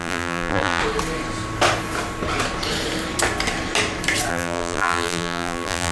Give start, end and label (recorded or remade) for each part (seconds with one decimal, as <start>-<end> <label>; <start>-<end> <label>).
0.0-0.8 remade; 0.8-4.3 recorded; 4.3-5.9 remade